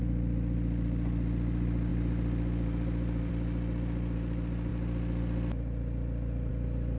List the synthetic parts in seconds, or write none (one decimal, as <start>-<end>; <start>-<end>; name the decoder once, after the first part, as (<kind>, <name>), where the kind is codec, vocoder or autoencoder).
none